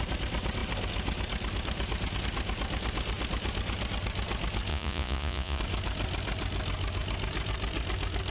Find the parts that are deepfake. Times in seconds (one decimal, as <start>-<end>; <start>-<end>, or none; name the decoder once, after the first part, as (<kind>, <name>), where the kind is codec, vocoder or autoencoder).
4.7-5.6 (vocoder, Vocos)